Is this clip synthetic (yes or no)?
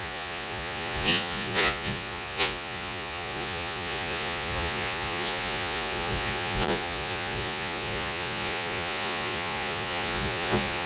yes